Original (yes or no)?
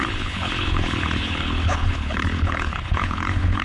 no